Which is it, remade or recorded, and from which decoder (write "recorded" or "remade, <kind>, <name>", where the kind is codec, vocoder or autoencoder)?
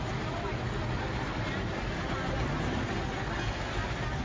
recorded